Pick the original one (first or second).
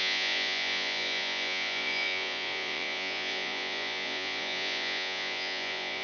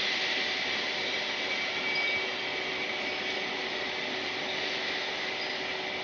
second